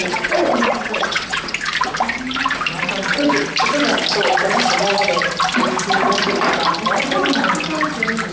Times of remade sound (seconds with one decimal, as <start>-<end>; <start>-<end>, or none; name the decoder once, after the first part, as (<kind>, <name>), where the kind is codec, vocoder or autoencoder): 0.0-1.5 (vocoder, WaveNeXt)